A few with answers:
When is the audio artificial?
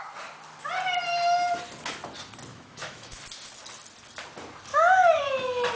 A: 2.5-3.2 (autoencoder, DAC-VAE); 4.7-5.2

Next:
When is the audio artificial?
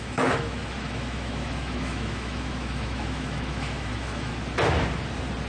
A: 0.0-4.3 (autoencoder, DAC-VAE)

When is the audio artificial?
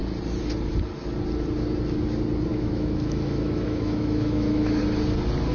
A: 2.5-4.8 (autoencoder, DAC-VAE)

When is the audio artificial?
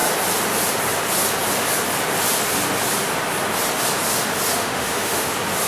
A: 4.6-5.3 (autoencoder, DAC-VAE)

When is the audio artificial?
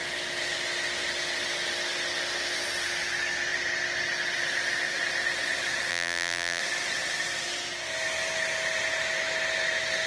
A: 5.9-6.6 (vocoder, BigVGAN v2)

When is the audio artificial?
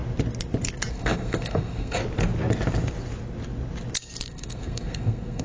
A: 0.9-2.0 (codec, SNAC); 4.3-5.4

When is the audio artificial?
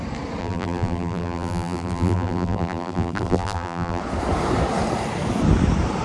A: 0.4-4.0 (vocoder, BigVGAN v2)